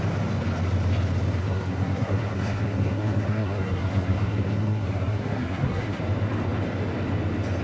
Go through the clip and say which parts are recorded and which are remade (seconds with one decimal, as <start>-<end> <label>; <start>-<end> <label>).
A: 0.0-1.4 recorded; 1.4-6.0 remade; 6.0-7.6 recorded